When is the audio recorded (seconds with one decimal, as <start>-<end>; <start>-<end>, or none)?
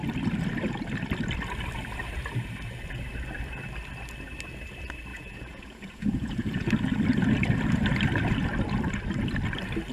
0.0-5.1; 6.7-9.9